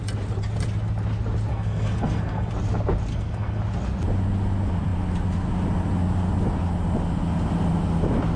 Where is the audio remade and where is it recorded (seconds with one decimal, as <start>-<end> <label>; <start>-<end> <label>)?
0.0-1.5 recorded; 1.5-2.5 remade; 2.5-3.1 recorded; 3.1-3.6 remade; 3.6-8.4 recorded